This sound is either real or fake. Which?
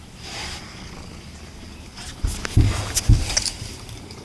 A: real